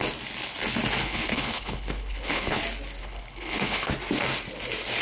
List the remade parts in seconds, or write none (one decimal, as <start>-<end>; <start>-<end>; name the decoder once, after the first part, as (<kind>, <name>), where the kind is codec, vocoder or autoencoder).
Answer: 1.0-2.6 (codec, HILCodec); 3.0-3.9